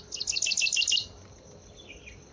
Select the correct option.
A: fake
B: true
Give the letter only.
B